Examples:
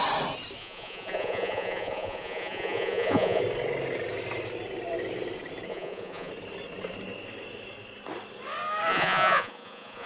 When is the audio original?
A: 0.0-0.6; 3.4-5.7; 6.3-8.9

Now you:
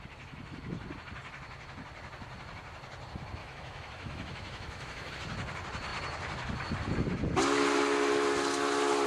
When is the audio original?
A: 0.0-3.4; 5.1-9.1

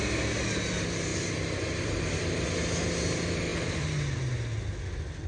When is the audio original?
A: 0.0-1.1; 2.2-5.3

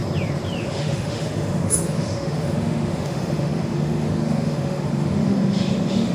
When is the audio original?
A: 0.0-0.6

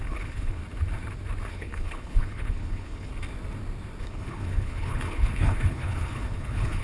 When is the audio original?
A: 0.6-1.5; 3.1-4.0

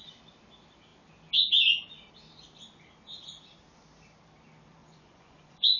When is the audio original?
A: 0.0-4.8

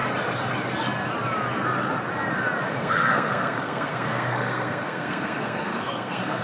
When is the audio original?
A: 0.0-2.7